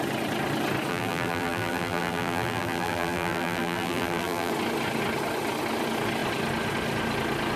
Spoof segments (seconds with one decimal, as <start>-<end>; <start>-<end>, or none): 0.9-4.5